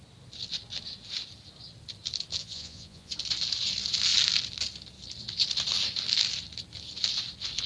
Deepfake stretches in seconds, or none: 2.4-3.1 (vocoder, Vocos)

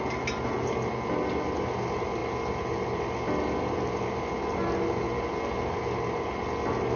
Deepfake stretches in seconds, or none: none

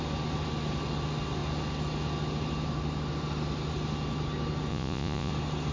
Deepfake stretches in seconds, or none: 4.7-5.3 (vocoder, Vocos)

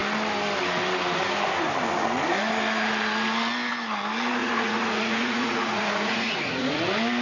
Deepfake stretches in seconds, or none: 4.4-6.8 (vocoder, Vocos)

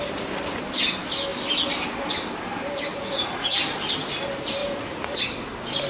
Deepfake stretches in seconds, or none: 2.9-3.6 (vocoder, Vocos); 4.6-5.2

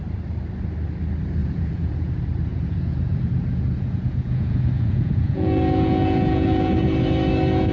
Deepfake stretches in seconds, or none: 1.4-2.1 (vocoder, Vocos); 2.5-6.8

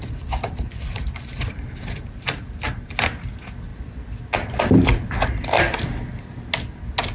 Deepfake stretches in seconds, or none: none

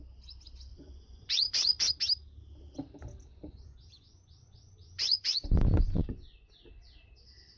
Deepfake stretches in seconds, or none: 0.7-1.9 (vocoder, Vocos); 3.3-6.5